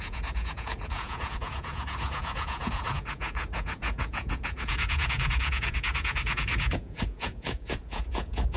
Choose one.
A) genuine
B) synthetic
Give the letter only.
B